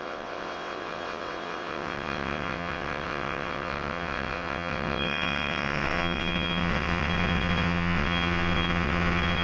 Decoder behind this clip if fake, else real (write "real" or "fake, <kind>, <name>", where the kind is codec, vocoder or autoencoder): fake, vocoder, WaveNeXt